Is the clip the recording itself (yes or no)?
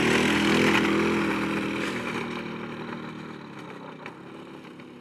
yes